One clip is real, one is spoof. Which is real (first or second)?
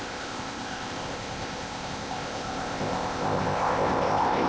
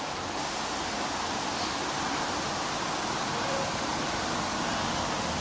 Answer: second